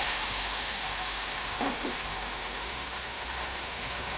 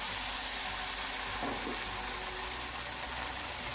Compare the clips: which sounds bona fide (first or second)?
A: second